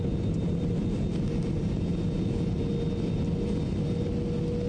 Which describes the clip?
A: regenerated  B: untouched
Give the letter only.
B